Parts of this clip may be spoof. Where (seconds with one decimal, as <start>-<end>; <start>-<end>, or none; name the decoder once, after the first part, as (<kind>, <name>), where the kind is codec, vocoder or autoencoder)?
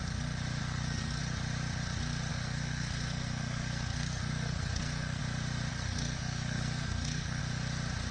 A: 0.6-1.2 (codec, SNAC); 2.3-5.2; 5.7-7.4